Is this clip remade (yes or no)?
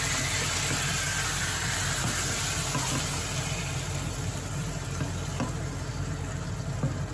no